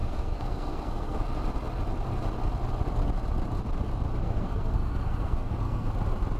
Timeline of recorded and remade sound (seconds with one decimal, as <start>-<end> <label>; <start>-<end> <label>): 0.0-1.2 remade; 1.2-4.2 recorded; 4.2-5.9 remade; 5.9-6.4 recorded